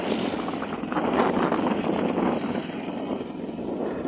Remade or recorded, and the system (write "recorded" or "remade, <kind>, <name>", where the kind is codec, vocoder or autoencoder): recorded